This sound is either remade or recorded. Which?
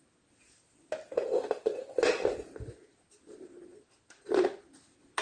recorded